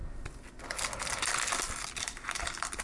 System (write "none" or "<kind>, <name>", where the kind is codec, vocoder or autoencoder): none